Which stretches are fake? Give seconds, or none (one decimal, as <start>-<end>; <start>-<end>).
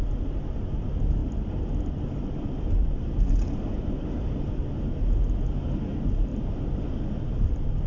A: 1.2-2.0; 2.8-4.4; 6.3-7.9